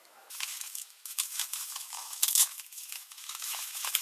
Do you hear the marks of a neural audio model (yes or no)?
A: yes